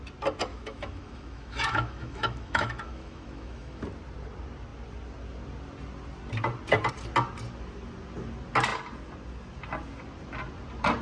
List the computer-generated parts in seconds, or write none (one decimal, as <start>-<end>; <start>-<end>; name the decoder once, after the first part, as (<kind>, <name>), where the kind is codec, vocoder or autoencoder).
0.5-3.8 (autoencoder, DAC-VAE)